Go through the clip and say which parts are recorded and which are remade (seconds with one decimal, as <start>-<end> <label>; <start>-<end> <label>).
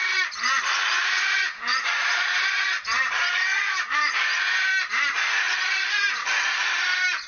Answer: 0.0-4.7 remade; 4.7-5.7 recorded; 5.7-7.3 remade